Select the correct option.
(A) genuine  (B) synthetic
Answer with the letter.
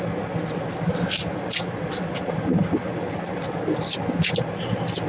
A